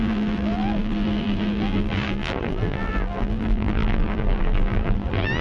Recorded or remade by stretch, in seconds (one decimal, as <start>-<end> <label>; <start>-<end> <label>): 0.0-5.4 remade